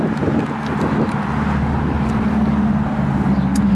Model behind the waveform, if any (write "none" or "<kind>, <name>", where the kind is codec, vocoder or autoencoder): none